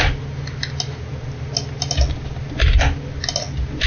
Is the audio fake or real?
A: real